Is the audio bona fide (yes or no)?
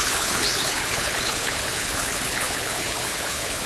no